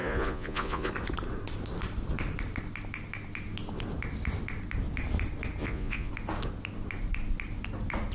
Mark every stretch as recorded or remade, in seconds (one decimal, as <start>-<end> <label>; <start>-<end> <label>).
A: 0.0-0.9 remade; 0.9-5.6 recorded; 5.6-6.1 remade; 6.1-8.1 recorded